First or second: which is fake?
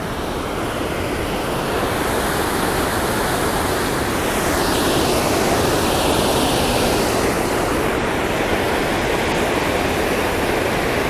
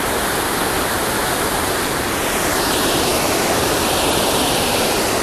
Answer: second